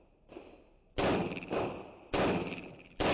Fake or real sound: real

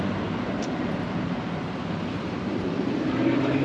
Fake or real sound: fake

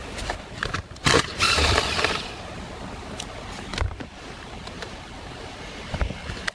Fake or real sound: fake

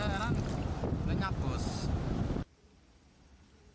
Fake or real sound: real